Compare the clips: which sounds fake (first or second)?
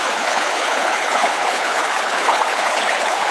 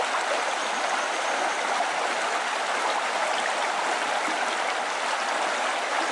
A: first